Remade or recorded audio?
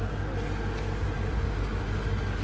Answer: recorded